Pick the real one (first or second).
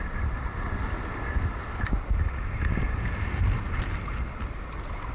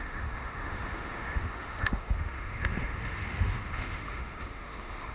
first